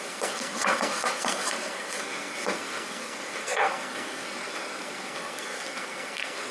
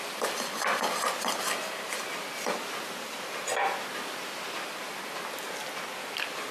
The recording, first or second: second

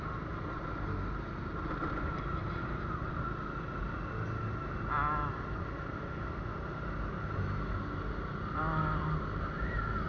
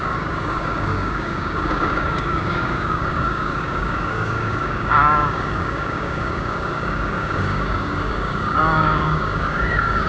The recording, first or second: first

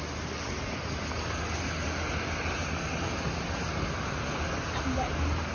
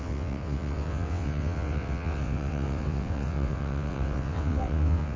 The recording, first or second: first